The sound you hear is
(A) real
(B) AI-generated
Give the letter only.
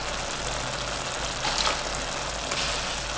A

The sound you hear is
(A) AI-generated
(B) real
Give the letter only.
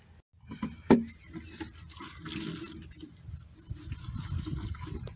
B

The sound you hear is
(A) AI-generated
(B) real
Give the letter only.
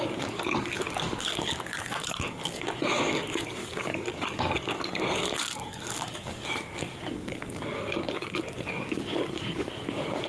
A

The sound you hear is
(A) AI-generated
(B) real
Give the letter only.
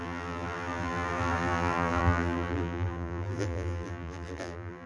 A